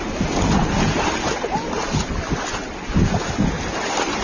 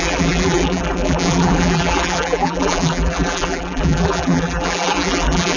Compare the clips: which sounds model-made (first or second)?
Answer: second